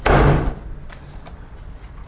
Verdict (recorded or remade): remade